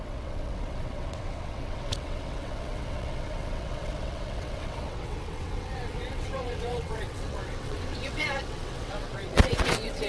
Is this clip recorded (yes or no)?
no